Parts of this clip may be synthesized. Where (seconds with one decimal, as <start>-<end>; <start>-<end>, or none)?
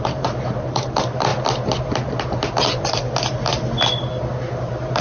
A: 0.0-1.3; 2.1-3.5; 4.4-5.0